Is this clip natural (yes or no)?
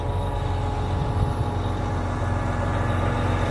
yes